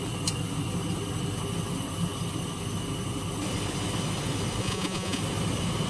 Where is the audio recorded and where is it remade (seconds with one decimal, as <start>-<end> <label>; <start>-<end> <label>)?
0.0-4.6 recorded; 4.6-5.2 remade; 5.2-5.9 recorded